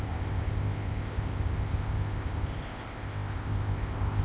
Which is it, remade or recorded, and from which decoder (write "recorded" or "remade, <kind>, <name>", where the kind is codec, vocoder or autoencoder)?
remade, codec, ZipCodec